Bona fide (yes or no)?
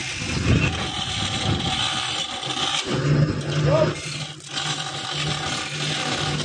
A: yes